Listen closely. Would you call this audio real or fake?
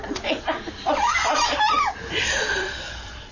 fake